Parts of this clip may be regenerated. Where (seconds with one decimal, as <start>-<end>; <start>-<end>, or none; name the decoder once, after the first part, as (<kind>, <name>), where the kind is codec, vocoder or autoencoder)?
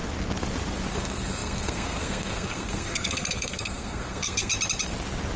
0.9-4.5 (codec, SNAC)